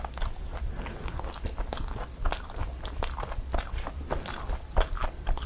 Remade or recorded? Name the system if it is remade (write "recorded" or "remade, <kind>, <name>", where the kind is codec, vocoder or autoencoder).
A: recorded